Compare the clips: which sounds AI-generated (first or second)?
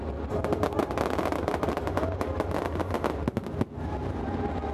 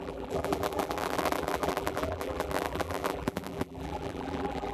second